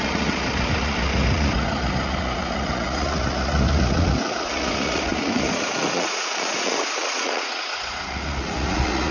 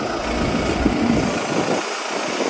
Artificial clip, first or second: first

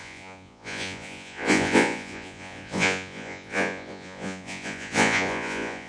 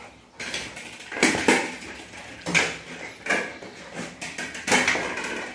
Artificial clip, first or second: first